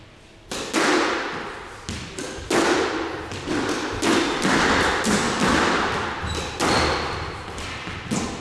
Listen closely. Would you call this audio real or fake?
real